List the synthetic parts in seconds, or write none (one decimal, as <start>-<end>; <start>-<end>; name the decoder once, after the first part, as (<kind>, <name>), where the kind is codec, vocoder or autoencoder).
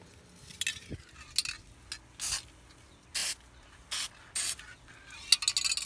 none